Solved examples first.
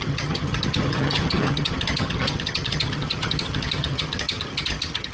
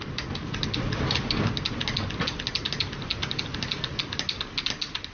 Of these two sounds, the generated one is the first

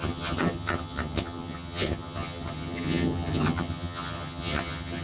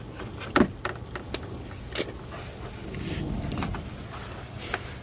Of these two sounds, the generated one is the first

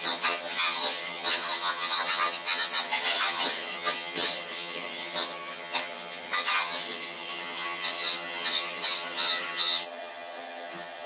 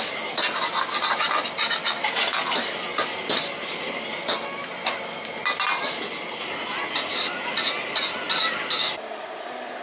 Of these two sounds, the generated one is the first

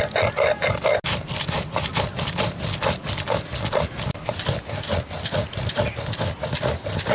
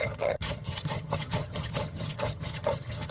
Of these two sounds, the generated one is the second